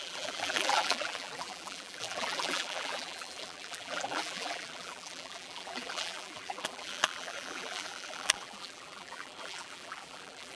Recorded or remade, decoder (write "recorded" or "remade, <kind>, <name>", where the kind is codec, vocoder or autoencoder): remade, vocoder, BigVGAN v2